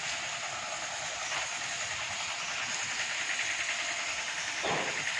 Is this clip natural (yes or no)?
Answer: yes